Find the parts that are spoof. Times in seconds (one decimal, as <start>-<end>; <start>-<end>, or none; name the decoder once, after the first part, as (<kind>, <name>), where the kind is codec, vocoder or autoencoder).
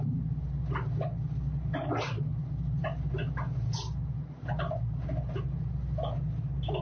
none